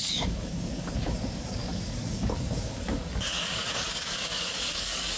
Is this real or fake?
fake